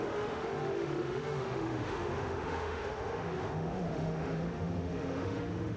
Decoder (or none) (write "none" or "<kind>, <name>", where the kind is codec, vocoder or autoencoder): autoencoder, DAC-VAE